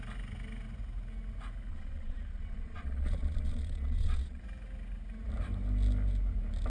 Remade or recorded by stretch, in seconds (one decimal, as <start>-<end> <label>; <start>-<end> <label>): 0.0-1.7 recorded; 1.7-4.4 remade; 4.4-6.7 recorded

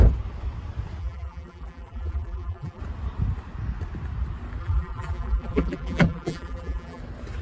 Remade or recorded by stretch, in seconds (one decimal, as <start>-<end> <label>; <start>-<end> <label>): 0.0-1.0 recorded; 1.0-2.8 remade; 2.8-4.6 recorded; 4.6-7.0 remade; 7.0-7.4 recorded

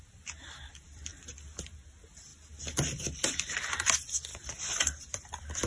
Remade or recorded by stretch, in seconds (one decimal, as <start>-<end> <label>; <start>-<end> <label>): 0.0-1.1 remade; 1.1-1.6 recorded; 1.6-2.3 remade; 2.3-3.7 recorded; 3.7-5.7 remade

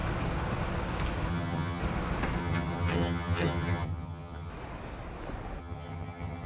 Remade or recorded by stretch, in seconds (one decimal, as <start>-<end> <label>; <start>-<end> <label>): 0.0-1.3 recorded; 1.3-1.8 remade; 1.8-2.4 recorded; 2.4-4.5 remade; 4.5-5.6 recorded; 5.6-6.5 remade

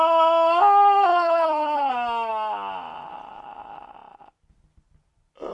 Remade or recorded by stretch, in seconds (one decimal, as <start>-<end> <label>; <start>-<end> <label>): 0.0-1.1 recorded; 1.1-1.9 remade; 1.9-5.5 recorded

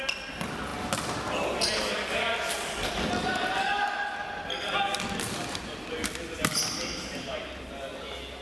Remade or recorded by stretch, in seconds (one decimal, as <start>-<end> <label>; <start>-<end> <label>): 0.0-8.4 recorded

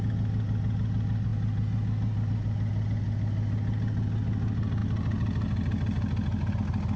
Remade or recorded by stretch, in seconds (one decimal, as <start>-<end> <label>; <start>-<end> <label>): 0.0-7.0 recorded

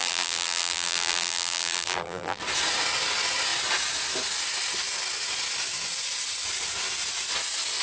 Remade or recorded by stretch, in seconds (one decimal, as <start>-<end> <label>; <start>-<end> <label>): 0.0-2.4 remade; 2.4-7.8 recorded